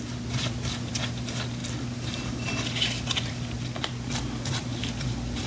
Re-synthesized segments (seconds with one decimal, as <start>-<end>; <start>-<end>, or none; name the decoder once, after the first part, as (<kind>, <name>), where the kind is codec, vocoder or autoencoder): none